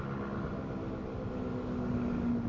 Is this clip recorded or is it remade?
recorded